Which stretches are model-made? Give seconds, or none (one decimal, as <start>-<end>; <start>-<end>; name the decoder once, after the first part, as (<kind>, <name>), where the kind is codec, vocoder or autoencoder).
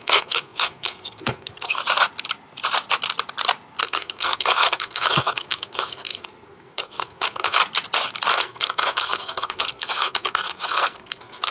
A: 0.0-1.8 (codec, SNAC); 3.8-7.6; 8.3-11.5